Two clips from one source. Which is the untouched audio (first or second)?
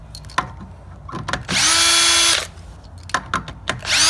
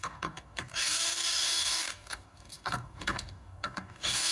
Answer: first